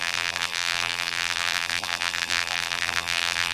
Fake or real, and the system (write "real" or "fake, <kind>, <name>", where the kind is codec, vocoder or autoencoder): fake, vocoder, BigVGAN v2